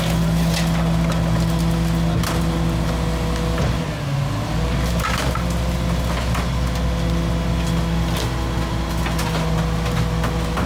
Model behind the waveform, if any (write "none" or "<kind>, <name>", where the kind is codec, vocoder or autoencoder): none